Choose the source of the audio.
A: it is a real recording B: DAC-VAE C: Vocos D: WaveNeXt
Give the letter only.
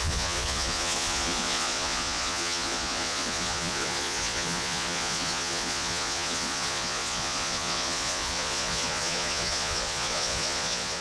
C